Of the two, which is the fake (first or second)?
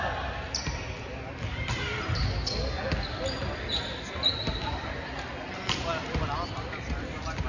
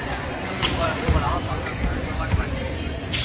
second